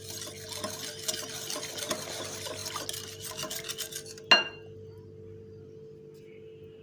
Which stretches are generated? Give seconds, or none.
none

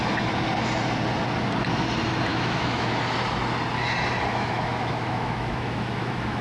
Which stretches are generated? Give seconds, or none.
2.3-3.0 (autoencoder, DAC-VAE); 4.3-6.4

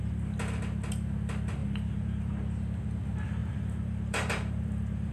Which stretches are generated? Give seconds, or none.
1.6-2.4 (vocoder, BigVGAN v2); 3.4-5.1

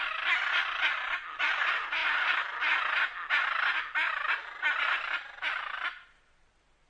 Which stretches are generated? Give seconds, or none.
none

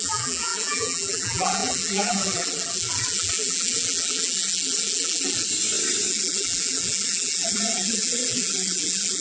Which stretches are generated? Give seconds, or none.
0.0-5.5 (vocoder, BigVGAN v2); 6.1-9.2

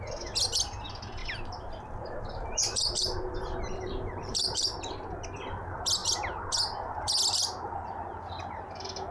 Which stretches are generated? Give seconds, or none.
1.2-4.8 (vocoder, BigVGAN v2)